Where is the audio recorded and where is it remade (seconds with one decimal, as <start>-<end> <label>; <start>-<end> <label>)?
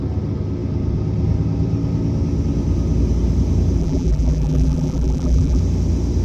0.0-3.8 recorded; 3.8-5.6 remade; 5.6-6.2 recorded